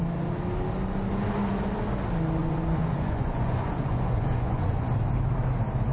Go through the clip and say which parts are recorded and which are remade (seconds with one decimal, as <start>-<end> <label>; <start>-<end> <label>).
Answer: 0.0-2.4 recorded; 2.4-4.9 remade; 4.9-5.9 recorded